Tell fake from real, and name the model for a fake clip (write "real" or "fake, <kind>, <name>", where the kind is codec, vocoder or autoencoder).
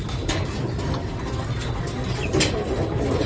real